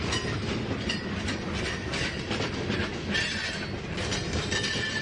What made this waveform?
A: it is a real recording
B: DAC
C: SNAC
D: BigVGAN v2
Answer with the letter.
A